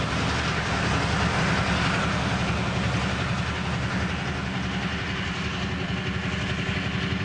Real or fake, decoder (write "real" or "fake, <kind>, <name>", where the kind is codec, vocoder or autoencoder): real